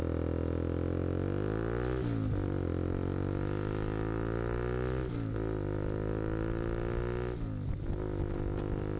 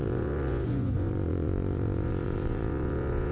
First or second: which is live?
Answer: first